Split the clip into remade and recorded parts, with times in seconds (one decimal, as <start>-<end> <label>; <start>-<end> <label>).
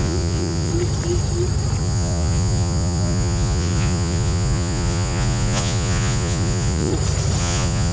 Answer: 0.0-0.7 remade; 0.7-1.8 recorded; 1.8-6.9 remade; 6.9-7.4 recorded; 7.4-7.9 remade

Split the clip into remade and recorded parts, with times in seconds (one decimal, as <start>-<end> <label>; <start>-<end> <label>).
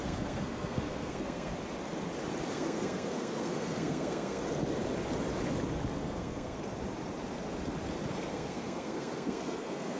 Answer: 0.0-1.5 remade; 1.5-2.5 recorded; 2.5-4.4 remade; 4.4-5.9 recorded; 5.9-6.7 remade; 6.7-8.3 recorded; 8.3-10.0 remade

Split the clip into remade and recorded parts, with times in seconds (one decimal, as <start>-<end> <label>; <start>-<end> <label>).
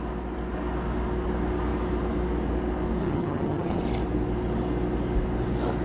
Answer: 0.0-3.0 recorded; 3.0-3.8 remade; 3.8-5.8 recorded